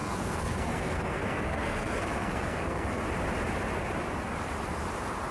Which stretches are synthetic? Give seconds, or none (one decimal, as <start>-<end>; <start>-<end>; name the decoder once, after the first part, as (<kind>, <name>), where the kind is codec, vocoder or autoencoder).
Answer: 0.0-3.0 (codec, SNAC)